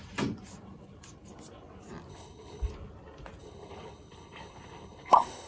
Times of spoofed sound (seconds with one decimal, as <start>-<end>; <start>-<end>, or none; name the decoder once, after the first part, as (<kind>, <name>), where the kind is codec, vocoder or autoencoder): 2.1-2.7 (codec, HILCodec); 3.4-5.5